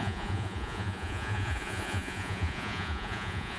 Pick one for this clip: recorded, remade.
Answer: remade